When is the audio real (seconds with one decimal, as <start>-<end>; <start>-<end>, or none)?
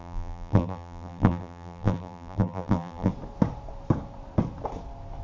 3.1-5.2